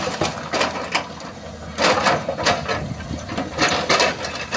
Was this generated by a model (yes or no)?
no